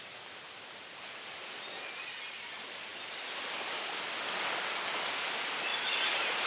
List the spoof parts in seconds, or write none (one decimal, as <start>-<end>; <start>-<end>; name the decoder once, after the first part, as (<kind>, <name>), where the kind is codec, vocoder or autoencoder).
5.7-6.5 (vocoder, BigVGAN v2)